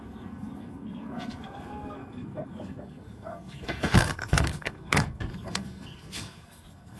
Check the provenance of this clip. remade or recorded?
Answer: remade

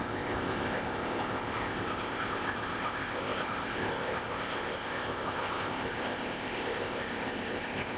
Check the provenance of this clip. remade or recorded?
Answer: remade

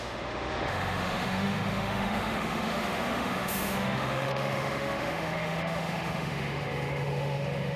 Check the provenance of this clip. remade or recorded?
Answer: remade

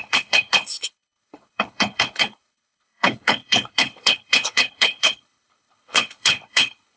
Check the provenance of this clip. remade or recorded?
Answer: remade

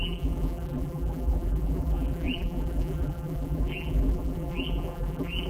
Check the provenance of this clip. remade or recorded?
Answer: remade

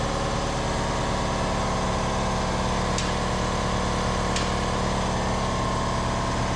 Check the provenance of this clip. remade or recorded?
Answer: recorded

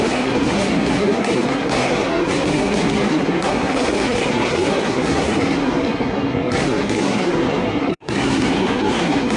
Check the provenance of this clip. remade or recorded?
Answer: remade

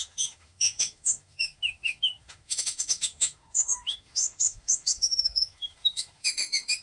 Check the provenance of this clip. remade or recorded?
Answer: remade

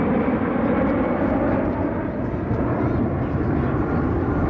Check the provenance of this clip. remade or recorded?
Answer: remade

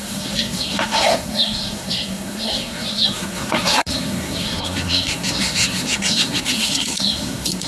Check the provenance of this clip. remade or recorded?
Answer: remade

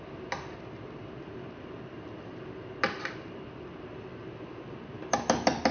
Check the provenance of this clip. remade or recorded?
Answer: recorded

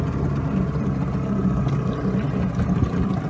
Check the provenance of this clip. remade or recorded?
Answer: recorded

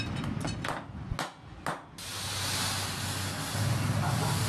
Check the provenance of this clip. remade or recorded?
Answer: recorded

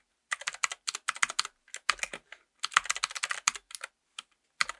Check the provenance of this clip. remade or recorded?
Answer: recorded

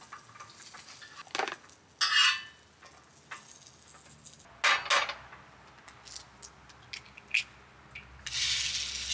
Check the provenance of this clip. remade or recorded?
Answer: recorded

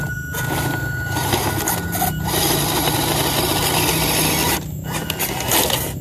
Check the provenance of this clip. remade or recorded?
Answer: recorded